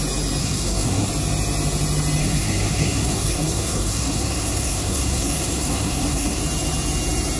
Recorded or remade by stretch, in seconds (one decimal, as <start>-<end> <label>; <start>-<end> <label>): 0.0-0.4 recorded; 0.4-1.1 remade; 1.1-2.2 recorded; 2.2-6.4 remade; 6.4-7.4 recorded